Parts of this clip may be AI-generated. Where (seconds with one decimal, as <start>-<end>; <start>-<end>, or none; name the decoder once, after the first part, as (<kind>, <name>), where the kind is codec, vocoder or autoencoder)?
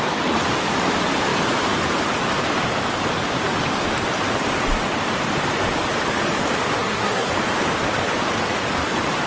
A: 6.8-7.3 (codec, SNAC)